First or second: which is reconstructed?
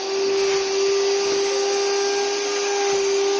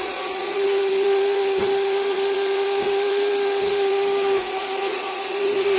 second